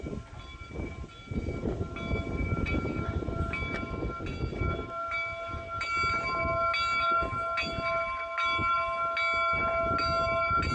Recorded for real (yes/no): yes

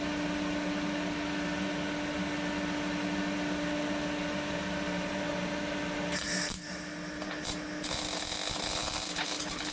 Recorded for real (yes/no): yes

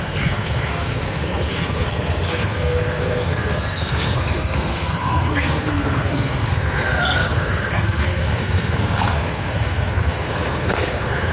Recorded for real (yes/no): no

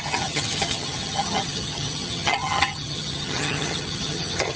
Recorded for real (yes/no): no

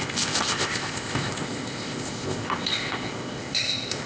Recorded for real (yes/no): no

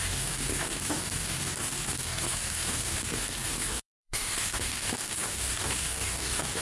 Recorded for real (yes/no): no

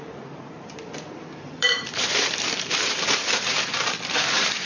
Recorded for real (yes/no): no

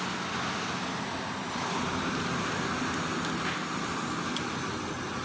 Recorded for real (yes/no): yes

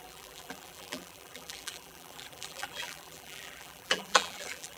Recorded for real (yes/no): no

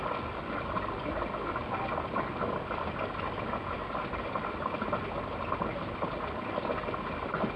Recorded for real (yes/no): yes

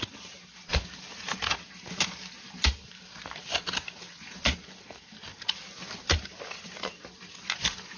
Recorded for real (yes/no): yes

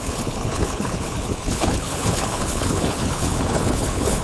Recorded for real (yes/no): no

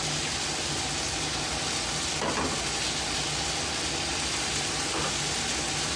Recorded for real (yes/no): yes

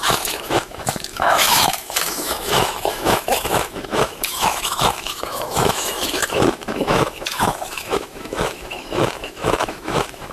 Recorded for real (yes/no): no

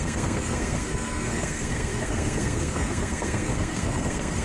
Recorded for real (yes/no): no